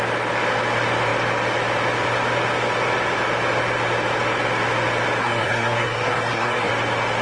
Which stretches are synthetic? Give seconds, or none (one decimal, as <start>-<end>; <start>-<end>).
5.2-6.7